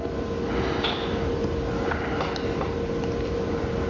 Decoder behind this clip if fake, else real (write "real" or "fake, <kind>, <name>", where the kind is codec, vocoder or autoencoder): real